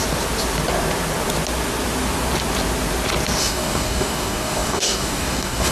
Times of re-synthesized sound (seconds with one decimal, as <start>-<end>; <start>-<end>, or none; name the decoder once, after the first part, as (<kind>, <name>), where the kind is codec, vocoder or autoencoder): 3.4-5.7 (codec, DAC)